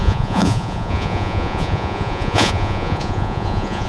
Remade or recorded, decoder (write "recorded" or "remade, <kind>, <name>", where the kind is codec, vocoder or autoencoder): remade, vocoder, Vocos